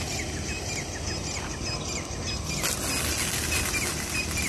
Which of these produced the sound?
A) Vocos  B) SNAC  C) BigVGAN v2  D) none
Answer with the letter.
D